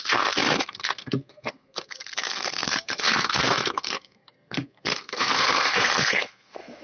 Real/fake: fake